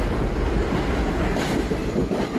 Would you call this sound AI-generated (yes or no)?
no